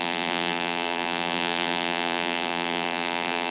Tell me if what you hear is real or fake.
fake